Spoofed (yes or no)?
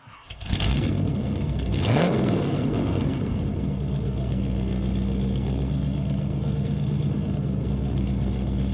yes